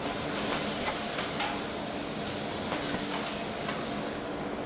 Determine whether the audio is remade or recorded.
recorded